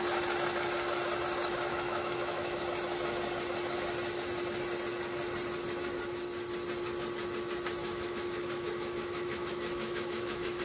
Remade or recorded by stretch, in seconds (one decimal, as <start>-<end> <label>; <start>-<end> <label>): 0.0-1.7 recorded; 1.7-2.6 remade; 2.6-7.8 recorded; 7.8-10.6 remade